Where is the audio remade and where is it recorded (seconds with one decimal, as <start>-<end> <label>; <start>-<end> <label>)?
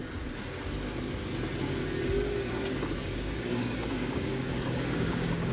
0.0-3.0 recorded; 3.0-5.5 remade